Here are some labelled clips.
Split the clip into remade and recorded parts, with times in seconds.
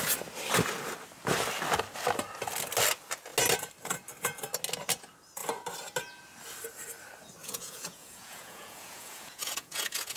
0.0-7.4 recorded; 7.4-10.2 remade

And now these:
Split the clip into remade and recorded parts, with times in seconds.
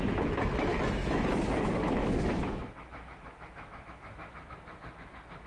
0.0-5.5 remade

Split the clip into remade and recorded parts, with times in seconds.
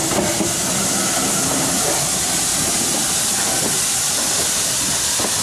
0.0-2.5 recorded; 2.5-3.1 remade; 3.1-5.4 recorded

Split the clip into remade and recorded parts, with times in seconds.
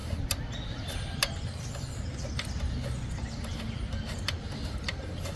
0.0-5.4 recorded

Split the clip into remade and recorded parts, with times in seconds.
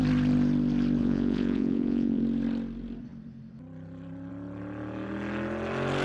0.0-1.0 recorded; 1.0-2.2 remade; 2.2-6.0 recorded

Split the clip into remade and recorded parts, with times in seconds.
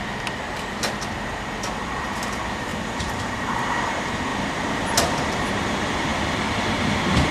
0.0-2.7 recorded; 2.7-3.6 remade; 3.6-7.3 recorded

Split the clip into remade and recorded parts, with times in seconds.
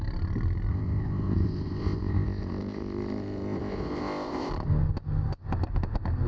0.0-0.7 recorded; 0.7-4.5 remade; 4.5-6.3 recorded